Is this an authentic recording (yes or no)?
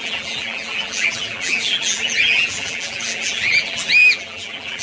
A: no